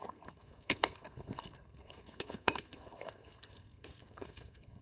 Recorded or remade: remade